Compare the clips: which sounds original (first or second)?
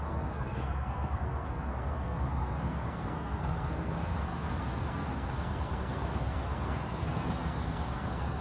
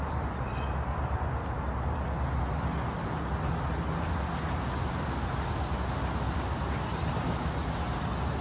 second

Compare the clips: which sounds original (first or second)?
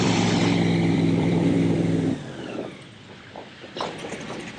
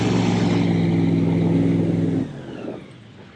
second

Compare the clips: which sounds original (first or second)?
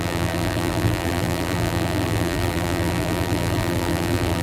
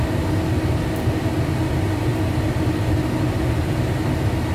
second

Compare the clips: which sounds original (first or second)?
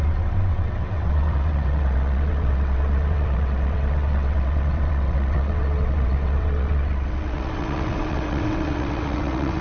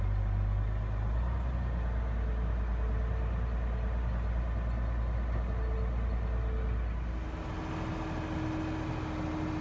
second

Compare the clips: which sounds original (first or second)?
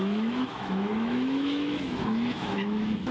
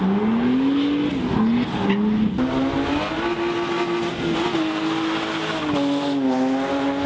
second